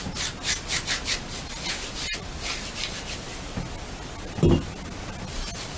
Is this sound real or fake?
real